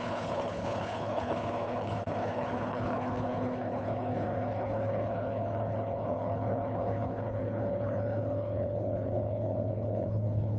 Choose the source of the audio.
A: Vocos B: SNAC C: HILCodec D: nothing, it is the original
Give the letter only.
C